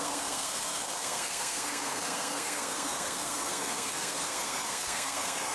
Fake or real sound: fake